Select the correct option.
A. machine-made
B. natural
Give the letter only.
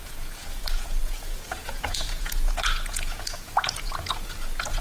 A